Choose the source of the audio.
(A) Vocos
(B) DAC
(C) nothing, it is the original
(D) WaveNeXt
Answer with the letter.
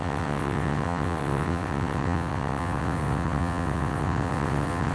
D